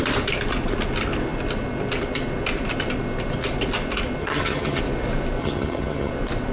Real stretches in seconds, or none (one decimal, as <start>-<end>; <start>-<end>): 0.0-4.2; 4.8-5.4; 6.1-6.5